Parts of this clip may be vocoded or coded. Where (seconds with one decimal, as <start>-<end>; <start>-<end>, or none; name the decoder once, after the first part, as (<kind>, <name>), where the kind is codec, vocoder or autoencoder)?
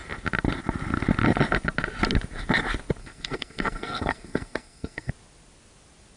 3.0-5.1 (codec, SNAC)